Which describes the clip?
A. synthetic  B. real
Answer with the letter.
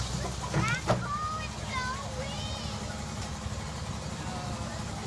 B